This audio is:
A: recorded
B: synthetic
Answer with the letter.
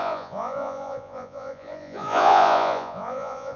B